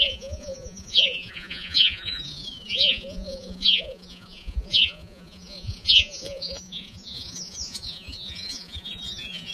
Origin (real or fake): fake